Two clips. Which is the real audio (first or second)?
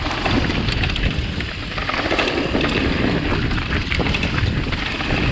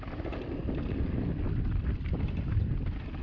second